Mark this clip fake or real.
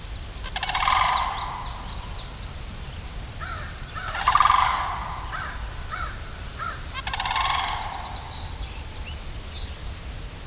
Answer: real